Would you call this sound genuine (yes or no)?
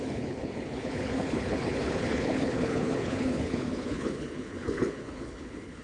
no